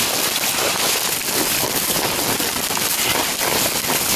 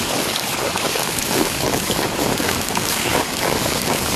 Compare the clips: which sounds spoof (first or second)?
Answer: second